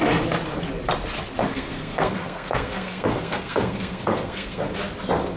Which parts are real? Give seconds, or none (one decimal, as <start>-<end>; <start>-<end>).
0.0-1.5; 4.7-5.4